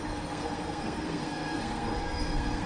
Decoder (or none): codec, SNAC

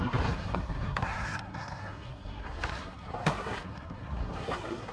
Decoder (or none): codec, SNAC